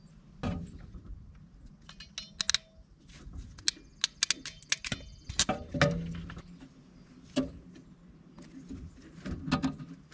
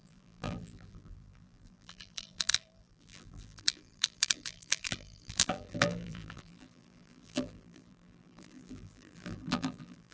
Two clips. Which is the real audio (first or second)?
first